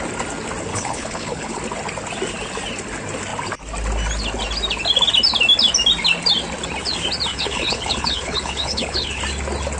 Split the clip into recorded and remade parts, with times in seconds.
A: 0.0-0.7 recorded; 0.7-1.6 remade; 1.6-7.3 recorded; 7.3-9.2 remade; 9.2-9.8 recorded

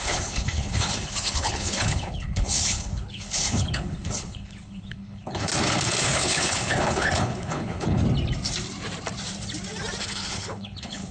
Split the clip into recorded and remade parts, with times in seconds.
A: 0.0-5.5 remade; 5.5-6.0 recorded; 6.0-8.0 remade; 8.0-10.0 recorded; 10.0-11.1 remade

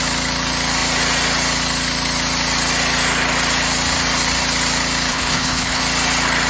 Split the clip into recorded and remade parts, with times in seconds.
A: 0.0-5.1 recorded; 5.1-5.8 remade; 5.8-6.5 recorded

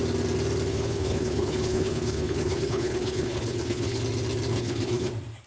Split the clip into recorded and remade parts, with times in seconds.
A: 0.0-0.7 recorded; 0.7-4.0 remade; 4.0-4.5 recorded; 4.5-5.1 remade; 5.1-5.5 recorded

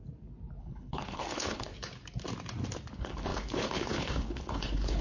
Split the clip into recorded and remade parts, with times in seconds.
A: 0.0-0.6 recorded; 0.6-1.7 remade; 1.7-2.9 recorded; 2.9-5.0 remade

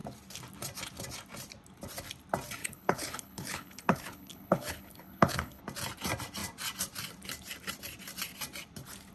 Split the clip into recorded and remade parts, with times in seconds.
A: 0.0-2.6 recorded; 2.6-5.6 remade; 5.6-9.1 recorded

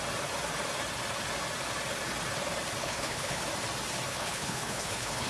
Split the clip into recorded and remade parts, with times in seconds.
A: 0.0-2.8 recorded; 2.8-3.4 remade; 3.4-4.1 recorded; 4.1-5.3 remade

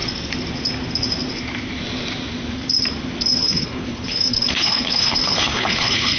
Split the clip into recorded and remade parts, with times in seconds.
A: 0.0-3.4 recorded; 3.4-6.2 remade